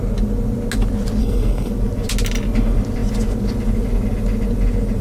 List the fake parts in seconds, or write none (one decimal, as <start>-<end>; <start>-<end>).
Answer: 1.2-1.7